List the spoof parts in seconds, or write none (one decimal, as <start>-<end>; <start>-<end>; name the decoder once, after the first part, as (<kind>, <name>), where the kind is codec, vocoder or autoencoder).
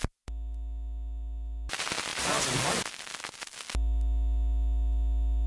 none